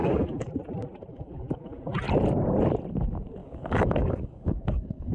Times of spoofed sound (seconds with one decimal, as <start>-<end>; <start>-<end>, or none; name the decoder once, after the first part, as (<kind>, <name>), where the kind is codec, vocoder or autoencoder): 0.0-0.5 (codec, DAC); 1.1-1.8; 3.4-5.1